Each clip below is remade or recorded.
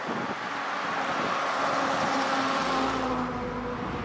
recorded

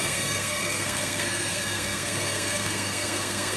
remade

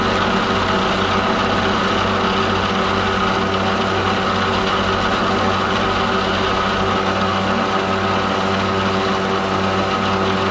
recorded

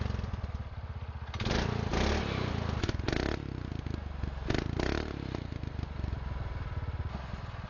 recorded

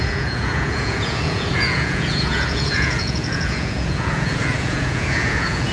remade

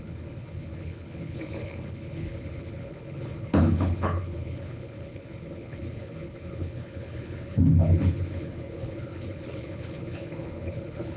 remade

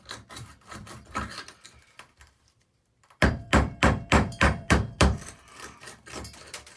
remade